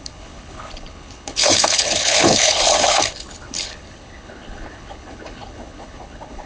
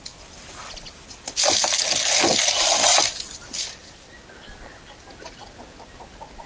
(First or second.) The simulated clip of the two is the first